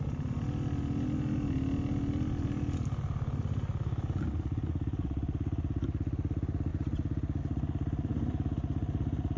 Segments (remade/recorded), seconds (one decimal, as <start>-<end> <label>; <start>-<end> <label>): 0.0-9.4 recorded